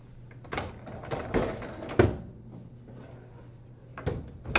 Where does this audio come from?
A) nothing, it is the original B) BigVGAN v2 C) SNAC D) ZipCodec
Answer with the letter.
A